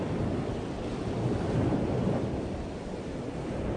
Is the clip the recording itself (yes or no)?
yes